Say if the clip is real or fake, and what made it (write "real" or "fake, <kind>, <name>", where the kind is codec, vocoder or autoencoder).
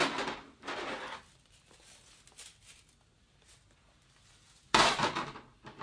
real